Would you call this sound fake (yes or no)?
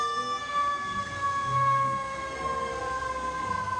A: yes